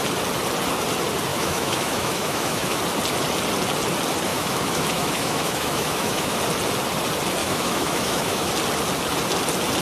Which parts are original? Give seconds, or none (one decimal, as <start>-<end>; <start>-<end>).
0.0-1.3; 2.8-4.3; 6.4-7.4; 8.5-9.8